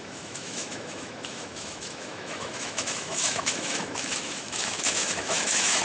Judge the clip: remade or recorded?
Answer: remade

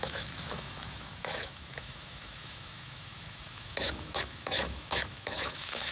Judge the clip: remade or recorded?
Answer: remade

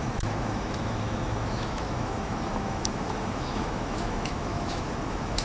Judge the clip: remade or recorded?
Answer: remade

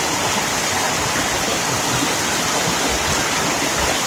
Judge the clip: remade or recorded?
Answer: recorded